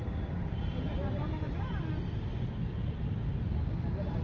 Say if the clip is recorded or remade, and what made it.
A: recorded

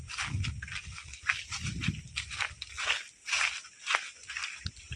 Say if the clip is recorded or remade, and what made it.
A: recorded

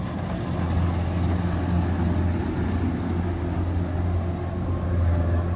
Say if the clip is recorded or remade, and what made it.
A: recorded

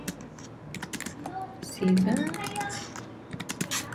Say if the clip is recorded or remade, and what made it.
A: recorded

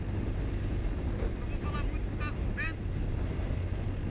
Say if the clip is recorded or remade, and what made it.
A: recorded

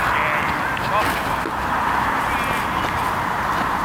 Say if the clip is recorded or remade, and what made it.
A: recorded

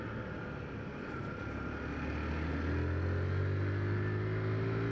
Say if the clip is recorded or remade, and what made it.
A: recorded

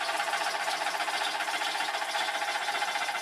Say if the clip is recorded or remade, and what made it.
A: recorded